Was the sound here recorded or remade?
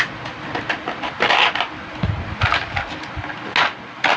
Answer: recorded